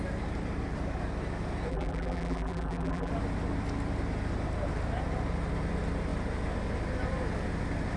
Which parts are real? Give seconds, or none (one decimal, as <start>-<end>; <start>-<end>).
0.0-1.7; 3.1-8.0